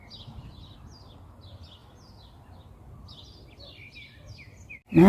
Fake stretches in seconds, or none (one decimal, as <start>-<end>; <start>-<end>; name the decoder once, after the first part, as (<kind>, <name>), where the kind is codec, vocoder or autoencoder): none